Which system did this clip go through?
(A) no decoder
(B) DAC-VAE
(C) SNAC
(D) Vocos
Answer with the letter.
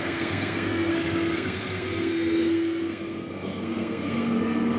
C